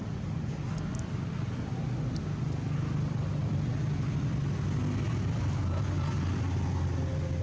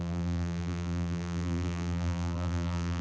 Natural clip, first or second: first